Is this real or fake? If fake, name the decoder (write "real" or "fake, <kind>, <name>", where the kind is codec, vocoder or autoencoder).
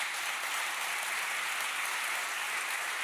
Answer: real